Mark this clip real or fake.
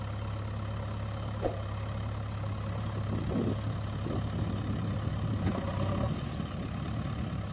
real